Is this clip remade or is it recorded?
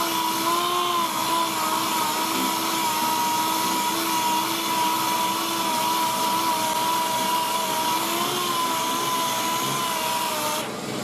recorded